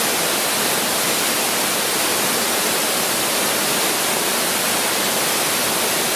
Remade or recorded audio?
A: recorded